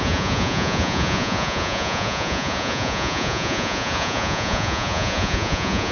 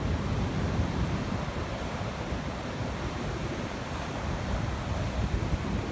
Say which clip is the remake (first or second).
first